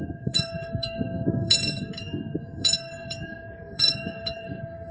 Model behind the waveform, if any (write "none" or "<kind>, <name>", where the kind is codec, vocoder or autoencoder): codec, SNAC